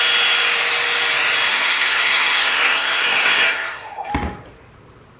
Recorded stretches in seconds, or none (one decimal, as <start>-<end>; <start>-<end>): 0.0-1.5; 4.1-5.2